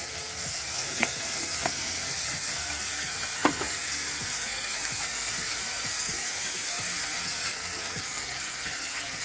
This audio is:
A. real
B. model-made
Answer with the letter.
B